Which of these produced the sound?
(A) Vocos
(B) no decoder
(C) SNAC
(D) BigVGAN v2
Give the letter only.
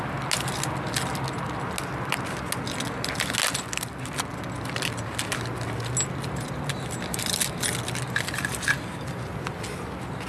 B